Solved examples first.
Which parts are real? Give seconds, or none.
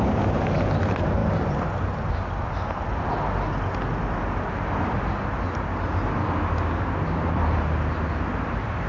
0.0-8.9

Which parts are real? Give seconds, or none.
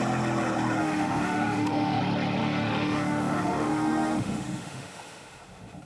0.0-0.8; 2.0-2.4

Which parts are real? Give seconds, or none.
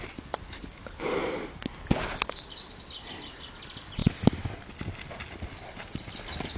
0.0-6.6